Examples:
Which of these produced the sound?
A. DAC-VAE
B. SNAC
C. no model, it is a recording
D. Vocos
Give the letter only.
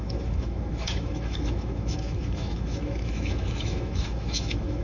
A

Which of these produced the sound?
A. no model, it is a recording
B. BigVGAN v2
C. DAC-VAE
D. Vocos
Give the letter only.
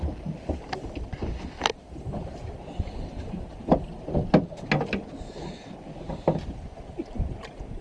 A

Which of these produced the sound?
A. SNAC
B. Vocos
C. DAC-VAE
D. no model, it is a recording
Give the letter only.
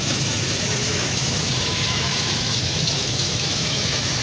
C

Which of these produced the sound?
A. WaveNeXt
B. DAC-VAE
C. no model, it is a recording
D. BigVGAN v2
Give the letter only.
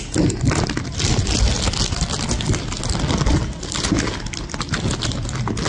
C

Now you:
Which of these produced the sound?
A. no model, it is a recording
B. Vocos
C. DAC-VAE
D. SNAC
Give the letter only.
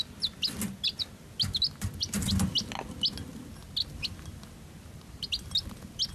A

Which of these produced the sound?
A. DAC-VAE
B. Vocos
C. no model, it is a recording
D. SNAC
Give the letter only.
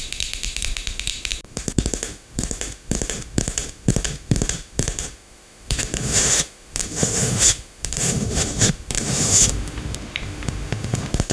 A